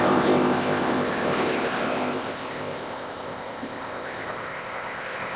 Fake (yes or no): yes